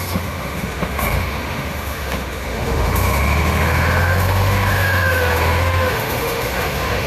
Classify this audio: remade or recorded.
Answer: remade